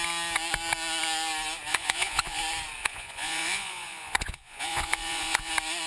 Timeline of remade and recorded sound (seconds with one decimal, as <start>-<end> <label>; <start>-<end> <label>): 0.0-1.7 recorded; 1.7-2.4 remade; 2.4-2.8 recorded; 2.8-5.5 remade; 5.5-5.9 recorded